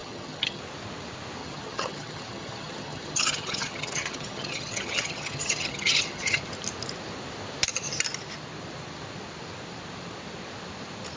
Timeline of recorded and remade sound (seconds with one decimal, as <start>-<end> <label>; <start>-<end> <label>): 0.0-0.6 remade; 0.6-1.4 recorded; 1.4-6.4 remade; 6.4-11.2 recorded